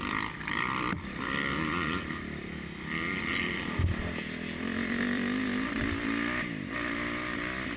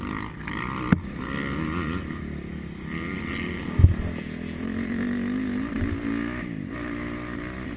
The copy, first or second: first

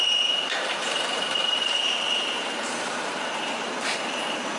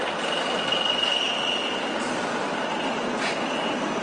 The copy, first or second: first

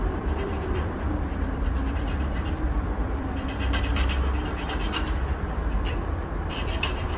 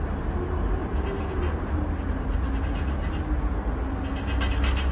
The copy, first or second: first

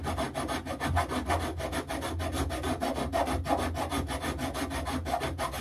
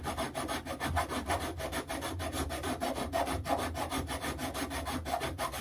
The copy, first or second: second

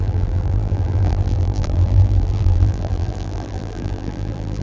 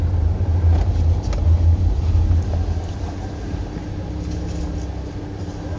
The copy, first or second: first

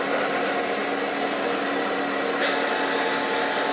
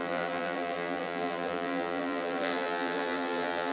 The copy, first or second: second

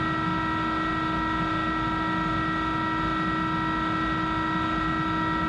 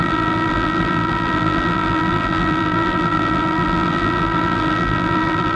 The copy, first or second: second